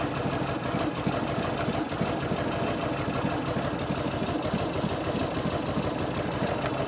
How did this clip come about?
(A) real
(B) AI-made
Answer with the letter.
A